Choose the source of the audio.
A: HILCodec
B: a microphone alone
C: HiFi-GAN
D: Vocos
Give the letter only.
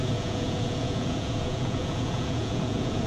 D